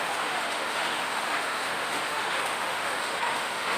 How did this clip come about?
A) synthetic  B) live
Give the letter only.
A